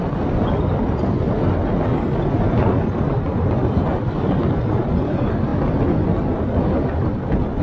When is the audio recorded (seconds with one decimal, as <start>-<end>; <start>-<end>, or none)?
0.0-7.6